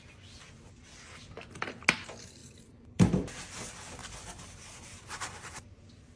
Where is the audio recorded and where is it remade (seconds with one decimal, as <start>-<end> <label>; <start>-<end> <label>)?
0.0-2.4 recorded; 2.4-3.3 remade; 3.3-4.0 recorded; 4.0-4.6 remade; 4.6-6.2 recorded